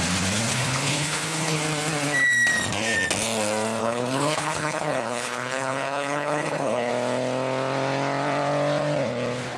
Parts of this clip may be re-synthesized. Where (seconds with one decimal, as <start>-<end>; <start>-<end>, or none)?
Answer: 0.5-1.6; 3.8-6.9